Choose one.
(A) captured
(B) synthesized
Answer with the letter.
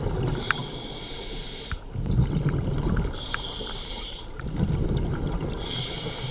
A